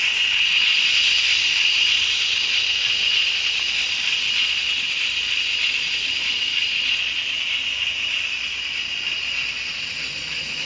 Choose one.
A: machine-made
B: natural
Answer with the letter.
B